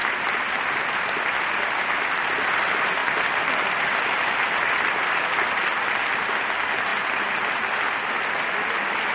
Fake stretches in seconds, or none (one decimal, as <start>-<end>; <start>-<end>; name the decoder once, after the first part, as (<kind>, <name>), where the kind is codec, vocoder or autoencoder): none